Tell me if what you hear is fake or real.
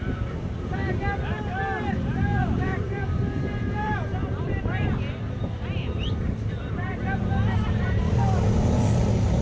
fake